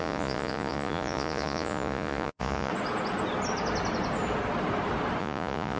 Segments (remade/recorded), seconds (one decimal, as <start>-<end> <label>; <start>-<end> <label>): 0.0-2.7 remade; 2.7-5.2 recorded; 5.2-5.8 remade